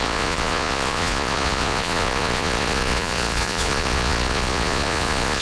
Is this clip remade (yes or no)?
yes